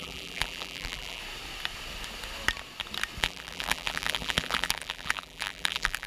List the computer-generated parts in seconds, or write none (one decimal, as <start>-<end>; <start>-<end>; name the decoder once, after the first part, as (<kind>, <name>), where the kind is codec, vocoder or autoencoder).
0.0-1.2 (vocoder, BigVGAN v2); 3.2-6.1